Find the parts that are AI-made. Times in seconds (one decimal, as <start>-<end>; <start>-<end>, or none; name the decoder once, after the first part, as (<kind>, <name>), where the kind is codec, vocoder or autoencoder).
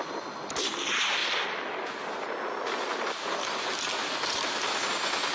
none